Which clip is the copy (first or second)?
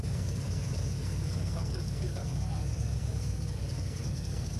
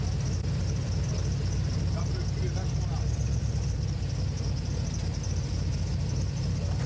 first